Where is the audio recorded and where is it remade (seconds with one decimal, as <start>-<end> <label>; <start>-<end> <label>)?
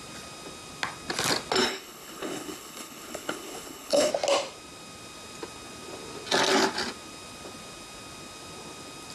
0.0-1.6 recorded; 1.6-4.1 remade; 4.1-9.1 recorded